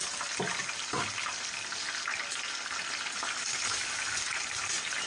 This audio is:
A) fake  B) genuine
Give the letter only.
B